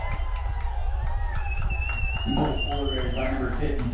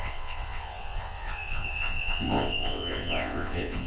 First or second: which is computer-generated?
second